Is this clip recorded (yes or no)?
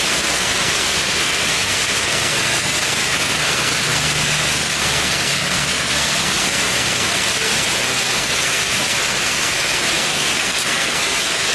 no